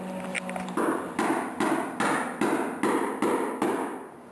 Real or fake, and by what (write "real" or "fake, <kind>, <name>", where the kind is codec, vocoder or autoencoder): real